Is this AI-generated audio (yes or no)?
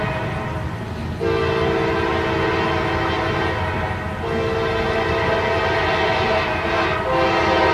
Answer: no